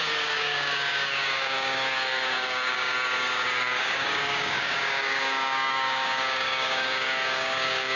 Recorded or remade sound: remade